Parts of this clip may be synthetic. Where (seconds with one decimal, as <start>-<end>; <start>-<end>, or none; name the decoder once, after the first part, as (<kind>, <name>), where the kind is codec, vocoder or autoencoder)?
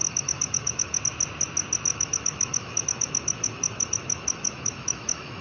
0.0-1.0 (autoencoder, DAC-VAE); 1.9-5.4